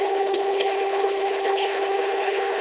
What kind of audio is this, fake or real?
fake